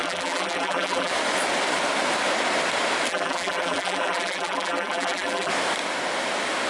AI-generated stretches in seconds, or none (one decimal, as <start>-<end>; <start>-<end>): 0.0-1.1; 3.1-5.5